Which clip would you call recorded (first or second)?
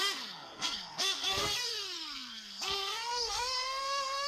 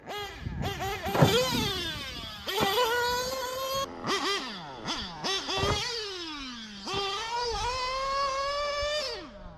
second